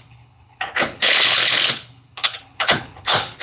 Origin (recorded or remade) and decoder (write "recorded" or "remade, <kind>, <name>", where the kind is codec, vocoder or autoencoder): remade, codec, HILCodec